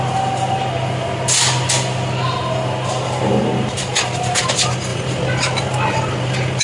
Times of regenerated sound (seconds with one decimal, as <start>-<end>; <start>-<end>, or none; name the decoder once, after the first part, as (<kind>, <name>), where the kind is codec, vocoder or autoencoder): none